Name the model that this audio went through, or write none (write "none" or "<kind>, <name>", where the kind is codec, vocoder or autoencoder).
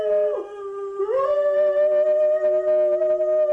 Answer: none